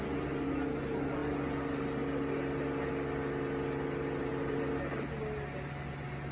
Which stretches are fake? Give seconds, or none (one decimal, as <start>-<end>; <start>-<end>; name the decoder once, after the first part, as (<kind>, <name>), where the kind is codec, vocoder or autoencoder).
none